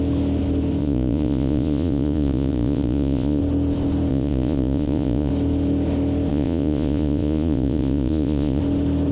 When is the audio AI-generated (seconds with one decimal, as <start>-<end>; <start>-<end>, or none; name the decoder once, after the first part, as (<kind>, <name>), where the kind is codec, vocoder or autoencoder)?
0.8-3.4 (vocoder, Vocos); 4.1-5.3; 6.3-8.6